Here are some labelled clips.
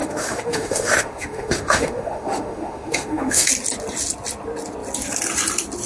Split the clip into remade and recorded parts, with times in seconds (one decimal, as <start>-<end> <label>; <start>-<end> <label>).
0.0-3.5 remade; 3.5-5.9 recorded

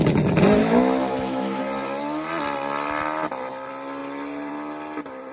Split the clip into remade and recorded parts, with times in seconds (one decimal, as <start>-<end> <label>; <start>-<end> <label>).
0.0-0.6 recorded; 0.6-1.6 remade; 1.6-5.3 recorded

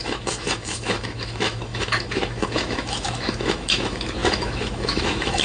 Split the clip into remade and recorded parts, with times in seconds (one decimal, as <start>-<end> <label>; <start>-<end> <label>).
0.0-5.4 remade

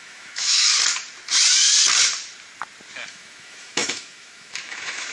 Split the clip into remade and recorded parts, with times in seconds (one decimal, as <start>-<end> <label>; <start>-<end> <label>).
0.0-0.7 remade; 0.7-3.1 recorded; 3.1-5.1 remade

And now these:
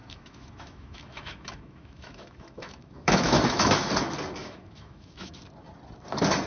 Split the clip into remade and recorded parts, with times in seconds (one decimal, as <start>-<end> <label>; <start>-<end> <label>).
0.0-3.9 remade; 3.9-4.4 recorded; 4.4-5.4 remade; 5.4-6.5 recorded

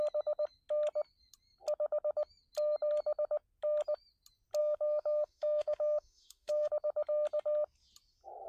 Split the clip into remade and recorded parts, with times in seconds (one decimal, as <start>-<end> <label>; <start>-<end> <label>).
0.0-4.6 recorded; 4.6-6.7 remade; 6.7-8.5 recorded

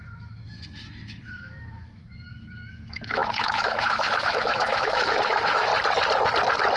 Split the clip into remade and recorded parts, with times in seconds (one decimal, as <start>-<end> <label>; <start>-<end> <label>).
0.0-5.7 remade; 5.7-6.8 recorded